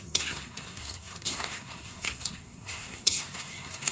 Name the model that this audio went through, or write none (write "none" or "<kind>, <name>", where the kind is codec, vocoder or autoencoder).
codec, SNAC